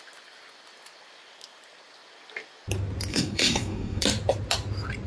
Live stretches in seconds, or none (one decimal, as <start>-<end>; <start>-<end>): 0.0-3.1; 4.0-5.1